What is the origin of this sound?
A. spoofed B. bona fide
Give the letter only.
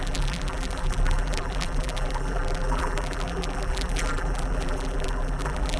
A